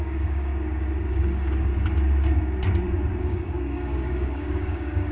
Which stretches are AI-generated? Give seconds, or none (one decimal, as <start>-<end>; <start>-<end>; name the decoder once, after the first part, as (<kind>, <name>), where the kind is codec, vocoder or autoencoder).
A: 0.0-0.5 (codec, DAC); 1.1-1.7; 3.2-5.1